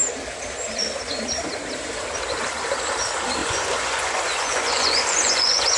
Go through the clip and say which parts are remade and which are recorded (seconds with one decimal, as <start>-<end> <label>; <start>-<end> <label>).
0.0-3.4 recorded; 3.4-5.8 remade